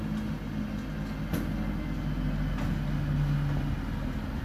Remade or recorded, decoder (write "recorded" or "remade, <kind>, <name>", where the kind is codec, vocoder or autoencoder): recorded